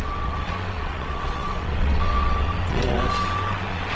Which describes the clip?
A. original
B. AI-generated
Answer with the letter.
B